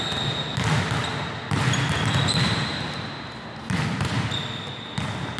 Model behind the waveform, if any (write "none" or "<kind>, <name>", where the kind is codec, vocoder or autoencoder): none